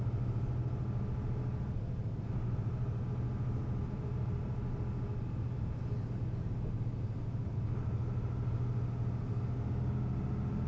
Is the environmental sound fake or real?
real